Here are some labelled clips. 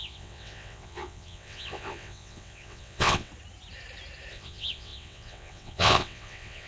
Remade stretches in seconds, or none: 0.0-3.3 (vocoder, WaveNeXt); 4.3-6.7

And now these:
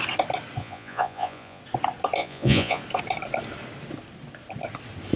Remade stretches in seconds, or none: 0.6-1.6 (vocoder, Vocos); 2.2-2.8

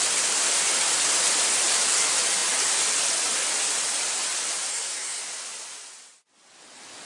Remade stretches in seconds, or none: 4.7-5.2 (codec, SNAC)

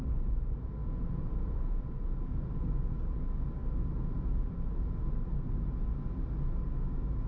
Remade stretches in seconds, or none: 0.8-2.5 (vocoder, Vocos)

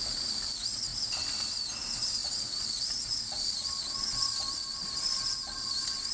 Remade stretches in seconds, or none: none

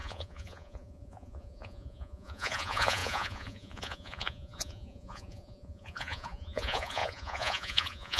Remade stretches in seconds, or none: 0.0-8.2 (vocoder, Vocos)

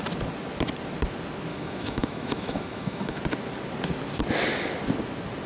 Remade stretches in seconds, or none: 1.5-3.2 (autoencoder, DAC-VAE)

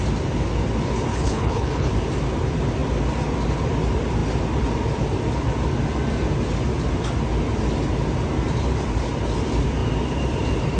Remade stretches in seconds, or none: 1.1-1.9 (codec, HILCodec)